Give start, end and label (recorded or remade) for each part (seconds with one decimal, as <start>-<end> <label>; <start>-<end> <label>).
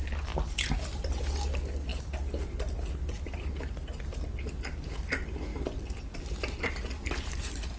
0.0-5.5 recorded; 5.5-6.6 remade; 6.6-7.8 recorded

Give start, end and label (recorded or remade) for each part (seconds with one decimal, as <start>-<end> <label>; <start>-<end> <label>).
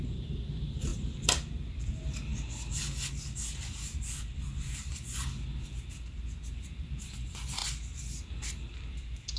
0.0-2.3 remade; 2.3-6.6 recorded; 6.6-7.6 remade; 7.6-8.7 recorded; 8.7-9.4 remade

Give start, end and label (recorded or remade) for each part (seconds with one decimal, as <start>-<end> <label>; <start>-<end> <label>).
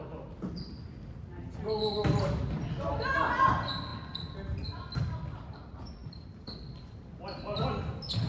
0.0-8.3 recorded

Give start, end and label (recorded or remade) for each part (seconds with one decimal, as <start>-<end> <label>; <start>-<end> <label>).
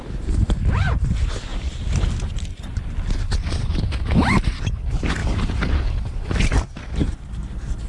0.0-1.5 recorded; 1.5-2.1 remade; 2.1-5.2 recorded; 5.2-5.7 remade; 5.7-7.9 recorded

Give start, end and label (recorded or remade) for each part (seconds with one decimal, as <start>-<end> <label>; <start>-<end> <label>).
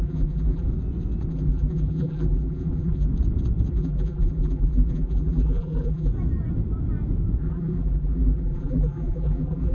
0.0-0.7 remade; 0.7-1.3 recorded; 1.3-3.1 remade; 3.1-3.7 recorded; 3.7-6.1 remade; 6.1-7.4 recorded; 7.4-9.7 remade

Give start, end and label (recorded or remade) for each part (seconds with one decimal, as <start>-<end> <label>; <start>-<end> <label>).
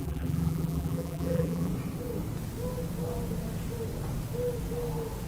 0.0-1.7 remade; 1.7-5.3 recorded